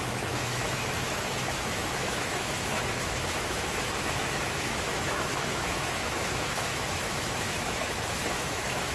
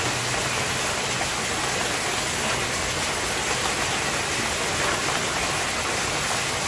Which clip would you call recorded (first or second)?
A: second